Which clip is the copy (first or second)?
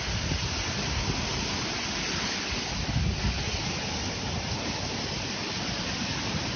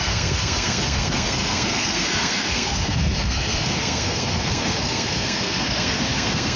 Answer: second